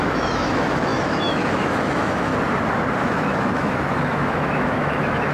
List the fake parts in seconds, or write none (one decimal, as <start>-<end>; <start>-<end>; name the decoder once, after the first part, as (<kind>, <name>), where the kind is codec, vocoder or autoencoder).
0.0-2.3 (autoencoder, DAC-VAE); 3.0-5.3

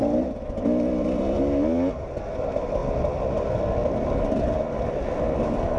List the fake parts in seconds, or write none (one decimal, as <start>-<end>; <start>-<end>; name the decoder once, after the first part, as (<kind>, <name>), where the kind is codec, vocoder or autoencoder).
none

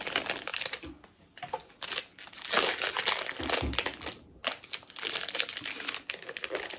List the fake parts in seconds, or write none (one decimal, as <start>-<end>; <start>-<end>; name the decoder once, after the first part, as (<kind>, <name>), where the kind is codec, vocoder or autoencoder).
none

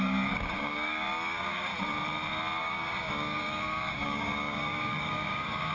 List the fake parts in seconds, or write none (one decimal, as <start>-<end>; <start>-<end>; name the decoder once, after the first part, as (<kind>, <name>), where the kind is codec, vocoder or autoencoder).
0.0-1.7 (codec, DAC); 2.6-5.7